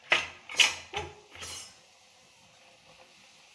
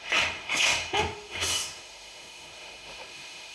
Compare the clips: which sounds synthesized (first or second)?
second